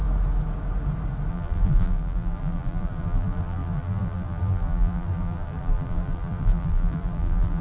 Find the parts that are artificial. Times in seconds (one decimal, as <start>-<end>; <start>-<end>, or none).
1.3-7.6